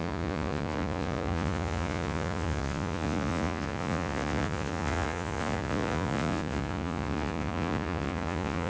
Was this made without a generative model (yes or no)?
no